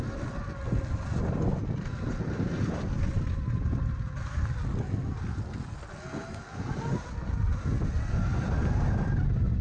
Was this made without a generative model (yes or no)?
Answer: yes